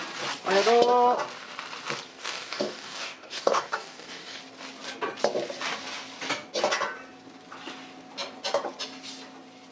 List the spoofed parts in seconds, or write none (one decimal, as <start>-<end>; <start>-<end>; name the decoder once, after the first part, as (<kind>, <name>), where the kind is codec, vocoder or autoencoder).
2.1-4.4 (codec, DAC)